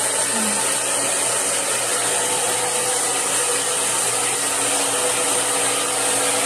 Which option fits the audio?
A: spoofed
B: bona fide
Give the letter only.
B